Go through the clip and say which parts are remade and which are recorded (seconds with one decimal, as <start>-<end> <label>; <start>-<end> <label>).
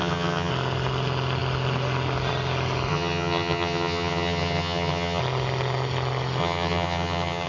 0.0-0.5 remade; 0.5-2.9 recorded; 2.9-5.2 remade; 5.2-6.4 recorded; 6.4-7.5 remade